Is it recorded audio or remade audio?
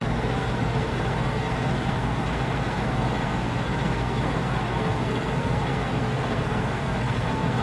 remade